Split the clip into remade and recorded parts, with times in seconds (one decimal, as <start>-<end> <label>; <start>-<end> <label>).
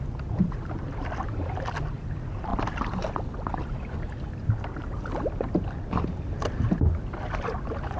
0.0-2.5 recorded; 2.5-6.7 remade; 6.7-8.0 recorded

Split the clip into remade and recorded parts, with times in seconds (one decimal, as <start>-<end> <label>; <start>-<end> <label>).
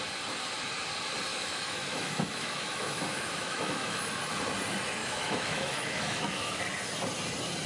0.0-1.3 recorded; 1.3-4.2 remade; 4.2-5.0 recorded; 5.0-6.6 remade; 6.6-7.7 recorded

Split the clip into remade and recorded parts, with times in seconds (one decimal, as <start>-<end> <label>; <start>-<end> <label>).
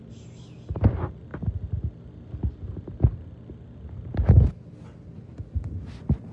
0.0-6.3 recorded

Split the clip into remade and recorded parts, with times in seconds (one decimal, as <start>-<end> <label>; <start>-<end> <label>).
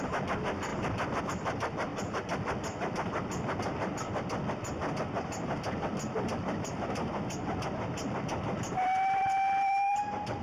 0.0-1.9 remade; 1.9-6.2 recorded; 6.2-10.4 remade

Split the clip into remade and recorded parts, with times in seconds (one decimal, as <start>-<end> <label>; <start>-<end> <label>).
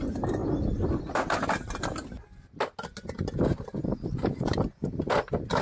0.0-5.6 recorded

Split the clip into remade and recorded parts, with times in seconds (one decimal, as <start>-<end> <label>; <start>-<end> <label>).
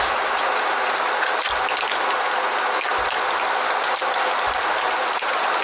0.0-5.6 recorded